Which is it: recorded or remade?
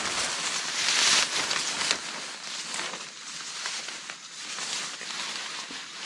recorded